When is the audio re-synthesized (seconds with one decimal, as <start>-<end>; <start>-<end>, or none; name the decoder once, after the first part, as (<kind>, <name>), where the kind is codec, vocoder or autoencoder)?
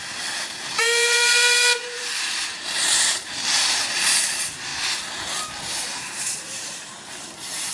0.0-4.7 (vocoder, BigVGAN v2); 5.7-7.7